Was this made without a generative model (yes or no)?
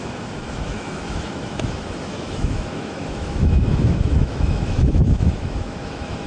no